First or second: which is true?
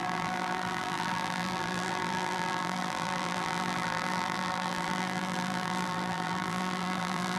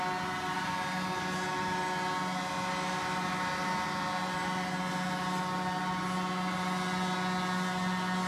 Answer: second